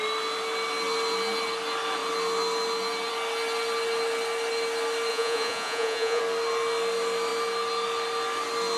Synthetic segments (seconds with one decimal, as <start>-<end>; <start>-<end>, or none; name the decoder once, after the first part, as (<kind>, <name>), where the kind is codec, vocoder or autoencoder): 5.1-6.2 (vocoder, Vocos)